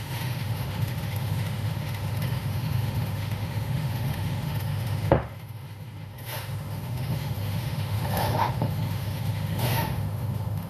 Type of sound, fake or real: fake